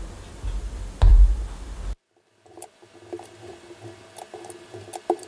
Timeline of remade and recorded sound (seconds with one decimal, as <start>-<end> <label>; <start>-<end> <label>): 0.0-5.3 recorded